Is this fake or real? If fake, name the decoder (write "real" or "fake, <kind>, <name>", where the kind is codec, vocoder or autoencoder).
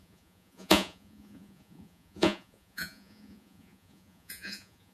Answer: fake, vocoder, Vocos